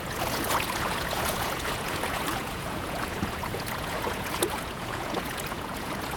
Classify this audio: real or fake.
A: fake